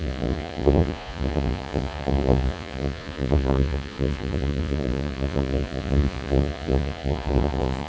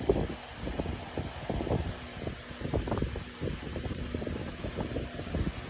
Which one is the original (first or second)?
second